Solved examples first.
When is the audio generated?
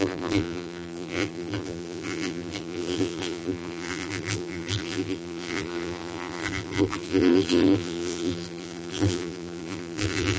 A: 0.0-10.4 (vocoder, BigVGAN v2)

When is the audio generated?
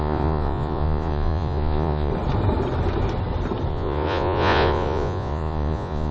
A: 0.0-2.1 (vocoder, Vocos); 3.7-6.1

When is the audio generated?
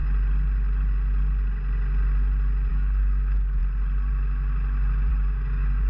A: 2.7-3.6 (codec, DAC); 5.1-5.9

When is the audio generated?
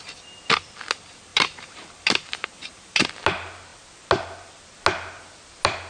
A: 1.3-3.1 (vocoder, BigVGAN v2)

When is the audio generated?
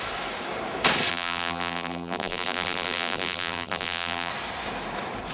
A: 1.1-4.3 (vocoder, BigVGAN v2)